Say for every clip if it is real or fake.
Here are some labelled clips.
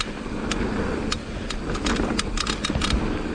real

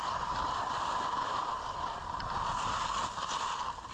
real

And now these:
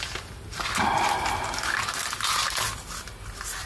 real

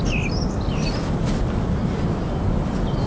real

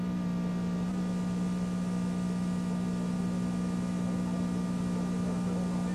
real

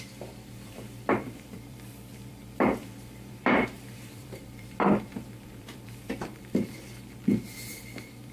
fake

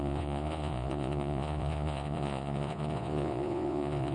fake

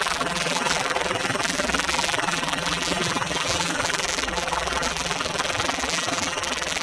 fake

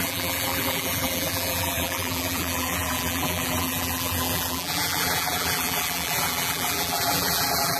fake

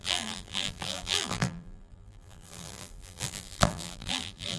fake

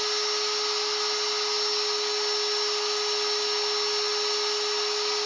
real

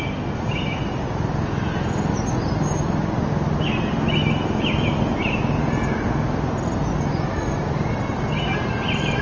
real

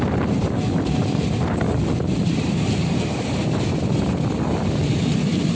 fake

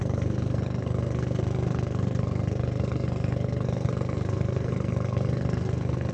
fake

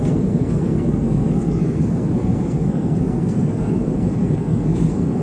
fake